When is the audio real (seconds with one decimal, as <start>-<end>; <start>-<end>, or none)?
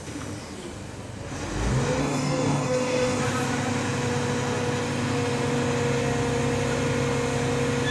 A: 0.0-2.0; 3.2-7.9